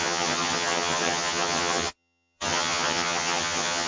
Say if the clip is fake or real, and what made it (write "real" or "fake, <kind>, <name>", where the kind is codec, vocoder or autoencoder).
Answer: fake, vocoder, HiFi-GAN